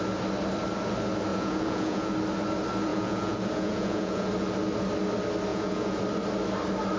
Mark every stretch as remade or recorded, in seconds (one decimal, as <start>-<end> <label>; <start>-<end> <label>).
0.0-1.3 recorded; 1.3-2.1 remade; 2.1-2.9 recorded; 2.9-4.3 remade; 4.3-5.5 recorded; 5.5-6.0 remade; 6.0-7.0 recorded